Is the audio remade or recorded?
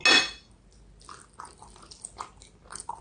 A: recorded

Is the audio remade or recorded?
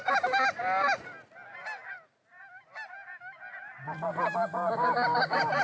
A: recorded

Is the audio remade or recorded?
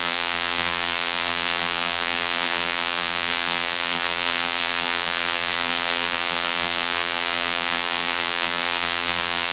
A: remade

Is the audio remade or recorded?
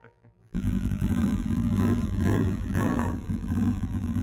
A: remade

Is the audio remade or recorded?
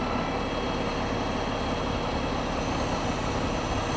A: recorded